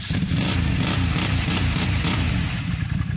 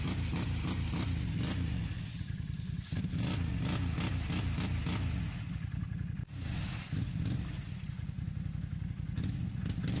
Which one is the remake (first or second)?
first